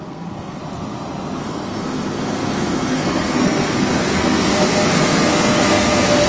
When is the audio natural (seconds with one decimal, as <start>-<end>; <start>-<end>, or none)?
0.6-1.4